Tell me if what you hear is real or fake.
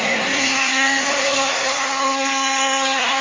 fake